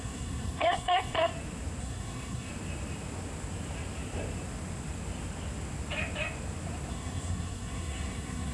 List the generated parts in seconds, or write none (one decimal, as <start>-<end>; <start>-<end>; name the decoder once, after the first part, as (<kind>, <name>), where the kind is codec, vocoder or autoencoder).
0.0-1.3 (codec, SNAC); 1.8-2.5; 6.9-8.5